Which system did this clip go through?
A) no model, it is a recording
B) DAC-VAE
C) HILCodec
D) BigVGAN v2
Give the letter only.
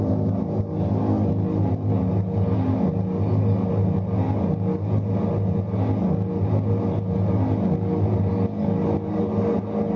A